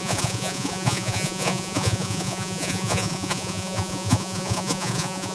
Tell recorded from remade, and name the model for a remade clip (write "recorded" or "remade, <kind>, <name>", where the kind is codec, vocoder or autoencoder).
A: remade, vocoder, Vocos